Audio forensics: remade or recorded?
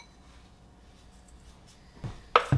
recorded